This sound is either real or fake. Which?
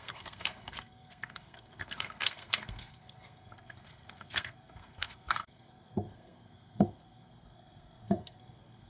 fake